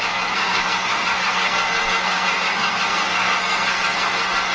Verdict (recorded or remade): remade